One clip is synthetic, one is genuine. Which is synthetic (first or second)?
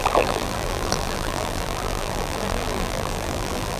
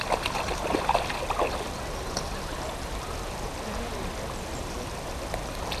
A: first